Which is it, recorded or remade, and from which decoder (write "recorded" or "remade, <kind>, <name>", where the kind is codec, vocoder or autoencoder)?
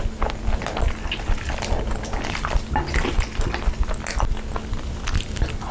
recorded